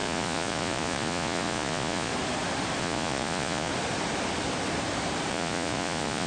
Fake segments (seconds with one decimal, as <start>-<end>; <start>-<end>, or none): 0.0-2.1; 2.8-3.7; 5.3-6.3